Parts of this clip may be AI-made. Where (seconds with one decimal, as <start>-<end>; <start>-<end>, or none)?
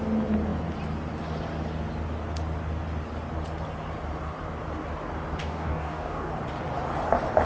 5.4-6.3